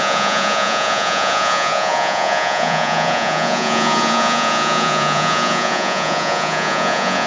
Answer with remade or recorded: remade